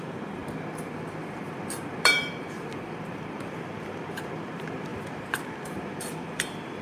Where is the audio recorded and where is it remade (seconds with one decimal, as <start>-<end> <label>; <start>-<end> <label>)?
0.0-0.4 remade; 0.4-0.9 recorded; 0.9-6.8 remade